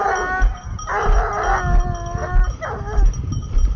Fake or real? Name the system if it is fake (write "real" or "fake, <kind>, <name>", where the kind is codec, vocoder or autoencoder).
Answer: real